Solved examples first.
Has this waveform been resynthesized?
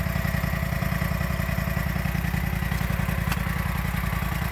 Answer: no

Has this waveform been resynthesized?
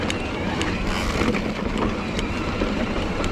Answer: yes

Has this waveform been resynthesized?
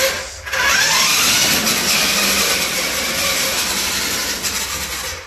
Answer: no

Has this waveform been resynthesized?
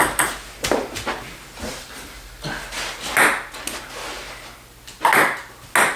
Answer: no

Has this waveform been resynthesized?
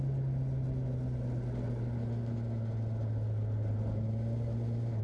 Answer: no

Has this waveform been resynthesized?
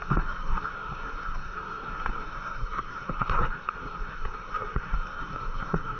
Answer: yes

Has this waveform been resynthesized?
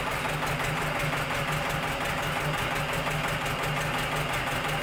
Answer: no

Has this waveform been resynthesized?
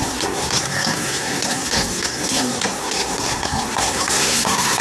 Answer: yes